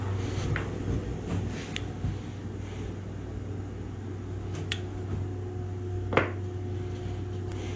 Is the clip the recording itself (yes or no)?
yes